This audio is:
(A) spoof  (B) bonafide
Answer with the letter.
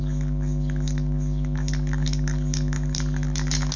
A